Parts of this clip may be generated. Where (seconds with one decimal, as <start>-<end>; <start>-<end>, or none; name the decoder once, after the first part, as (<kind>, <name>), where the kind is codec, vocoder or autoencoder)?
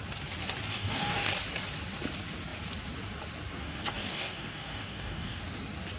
0.7-1.3 (codec, DAC); 3.6-5.4